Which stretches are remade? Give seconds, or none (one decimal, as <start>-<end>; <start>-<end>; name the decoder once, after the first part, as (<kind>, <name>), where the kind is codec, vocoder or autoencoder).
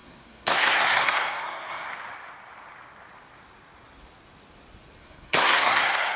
0.0-1.9 (codec, SNAC); 5.0-6.2